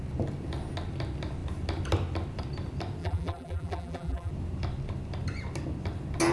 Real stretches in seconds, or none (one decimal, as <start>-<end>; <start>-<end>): 0.0-3.0; 4.3-6.3